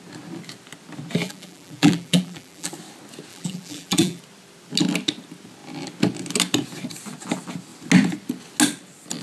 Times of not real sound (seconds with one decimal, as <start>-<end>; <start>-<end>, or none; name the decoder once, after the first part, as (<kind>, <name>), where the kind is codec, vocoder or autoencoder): 1.2-2.7 (vocoder, BigVGAN v2); 3.3-4.2